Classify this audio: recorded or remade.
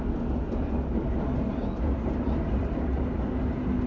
recorded